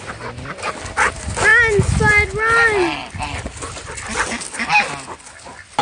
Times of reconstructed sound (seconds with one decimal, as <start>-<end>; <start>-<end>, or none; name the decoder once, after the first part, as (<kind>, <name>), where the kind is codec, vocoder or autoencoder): none